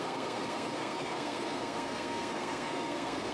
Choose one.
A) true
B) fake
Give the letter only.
B